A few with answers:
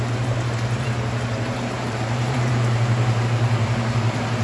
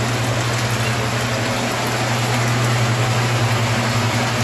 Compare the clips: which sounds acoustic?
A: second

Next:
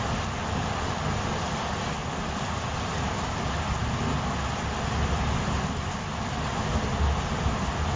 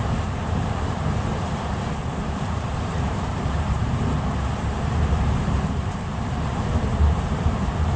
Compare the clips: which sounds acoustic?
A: first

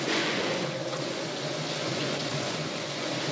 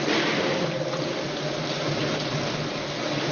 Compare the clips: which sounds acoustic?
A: second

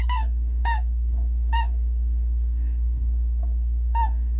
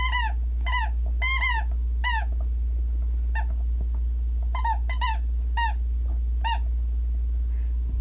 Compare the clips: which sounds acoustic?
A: second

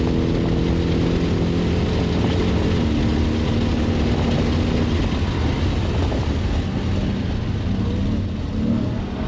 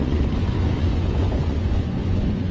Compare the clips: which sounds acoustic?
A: first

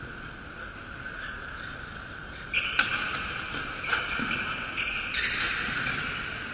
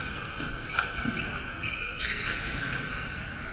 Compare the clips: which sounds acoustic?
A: first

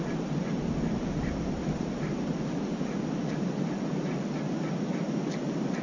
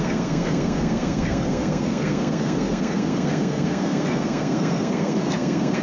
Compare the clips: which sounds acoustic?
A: first